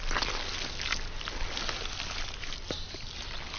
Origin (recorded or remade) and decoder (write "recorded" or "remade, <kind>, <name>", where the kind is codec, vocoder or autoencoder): recorded